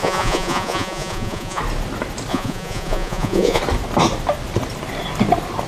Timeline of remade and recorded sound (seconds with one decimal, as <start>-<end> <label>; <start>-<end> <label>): 0.0-1.6 remade; 1.6-2.3 recorded; 2.3-3.6 remade; 3.6-5.7 recorded